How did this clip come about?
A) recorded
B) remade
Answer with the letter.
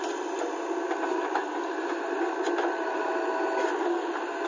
A